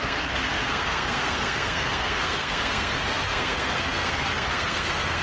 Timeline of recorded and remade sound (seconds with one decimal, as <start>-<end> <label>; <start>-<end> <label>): 0.0-5.2 remade